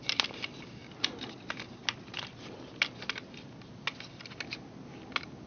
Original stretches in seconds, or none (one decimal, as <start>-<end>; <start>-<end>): 0.0-5.5